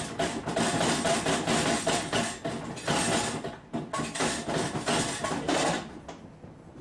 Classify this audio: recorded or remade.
recorded